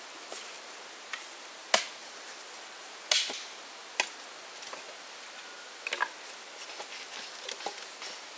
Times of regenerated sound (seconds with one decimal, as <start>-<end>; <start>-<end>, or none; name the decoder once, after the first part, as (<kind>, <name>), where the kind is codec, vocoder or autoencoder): none